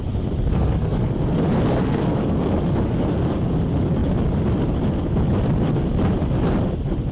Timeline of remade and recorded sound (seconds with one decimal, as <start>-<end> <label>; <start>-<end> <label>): 0.0-0.5 recorded; 0.5-1.1 remade; 1.1-1.8 recorded; 1.8-2.6 remade; 2.6-7.1 recorded